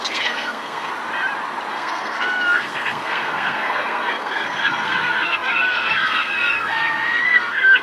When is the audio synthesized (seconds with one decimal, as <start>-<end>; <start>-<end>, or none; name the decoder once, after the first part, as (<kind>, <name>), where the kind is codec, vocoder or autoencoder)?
0.0-0.9 (codec, SNAC); 1.7-7.8